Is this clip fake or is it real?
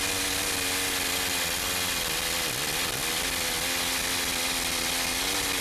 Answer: real